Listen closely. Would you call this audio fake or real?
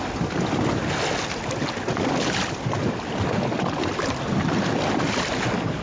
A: real